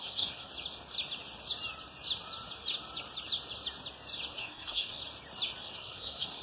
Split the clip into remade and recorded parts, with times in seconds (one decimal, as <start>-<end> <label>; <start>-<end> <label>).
0.0-0.5 remade; 0.5-4.3 recorded; 4.3-5.0 remade; 5.0-5.6 recorded; 5.6-6.4 remade